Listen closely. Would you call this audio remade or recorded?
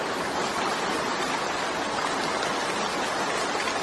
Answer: recorded